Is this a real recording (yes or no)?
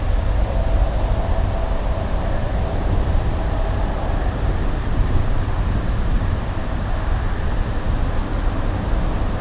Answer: yes